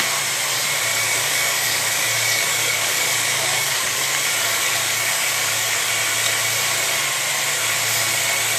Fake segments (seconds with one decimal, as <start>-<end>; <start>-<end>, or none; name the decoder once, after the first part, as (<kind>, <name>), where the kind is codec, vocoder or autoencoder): 0.9-5.9 (codec, DAC)